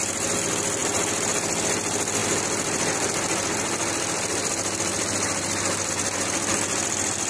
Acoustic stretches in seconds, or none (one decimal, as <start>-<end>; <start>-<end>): 0.0-0.8; 1.3-2.2; 5.9-7.3